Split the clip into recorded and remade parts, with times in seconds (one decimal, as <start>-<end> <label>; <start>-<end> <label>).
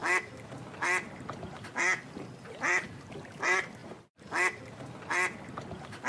0.0-6.1 recorded